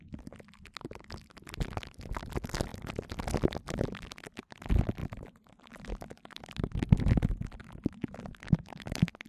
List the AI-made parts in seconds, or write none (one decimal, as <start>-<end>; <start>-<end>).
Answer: 5.0-5.8; 7.6-9.3